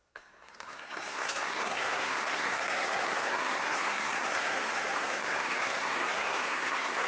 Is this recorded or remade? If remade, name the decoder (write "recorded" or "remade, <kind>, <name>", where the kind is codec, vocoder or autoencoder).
remade, codec, SNAC